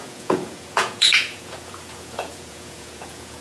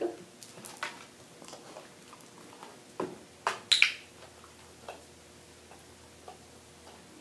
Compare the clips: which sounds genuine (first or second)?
second